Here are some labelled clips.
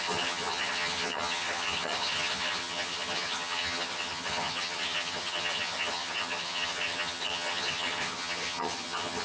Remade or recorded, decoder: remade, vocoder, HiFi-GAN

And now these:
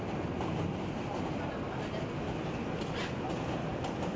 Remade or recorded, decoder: recorded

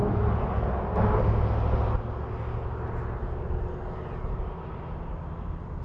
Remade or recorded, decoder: recorded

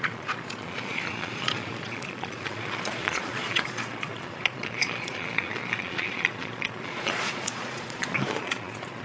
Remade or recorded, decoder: remade, vocoder, Vocos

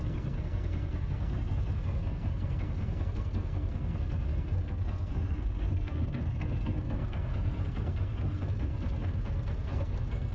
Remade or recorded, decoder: remade, codec, SNAC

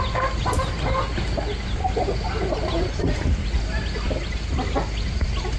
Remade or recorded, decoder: recorded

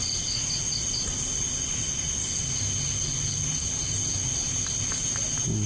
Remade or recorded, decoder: recorded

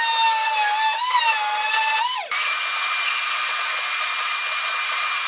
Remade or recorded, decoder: recorded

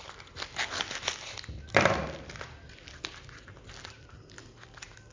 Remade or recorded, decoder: recorded